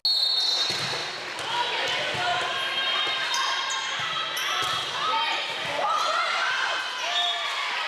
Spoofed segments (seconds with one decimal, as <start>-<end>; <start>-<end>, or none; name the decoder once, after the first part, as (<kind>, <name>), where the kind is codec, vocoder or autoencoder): 2.3-7.0 (vocoder, BigVGAN v2)